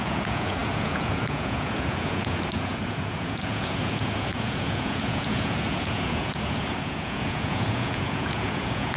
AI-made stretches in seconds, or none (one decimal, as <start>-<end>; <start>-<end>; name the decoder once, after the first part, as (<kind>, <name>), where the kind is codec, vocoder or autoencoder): 0.0-9.0 (vocoder, Vocos)